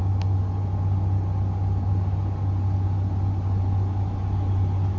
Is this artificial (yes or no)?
no